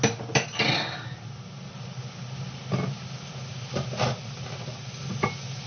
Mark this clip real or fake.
real